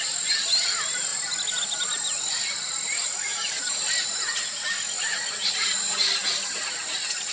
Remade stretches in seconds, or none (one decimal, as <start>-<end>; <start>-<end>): none